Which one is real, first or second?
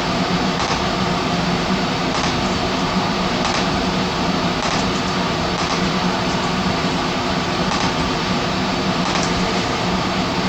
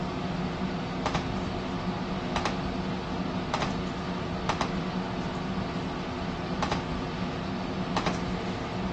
second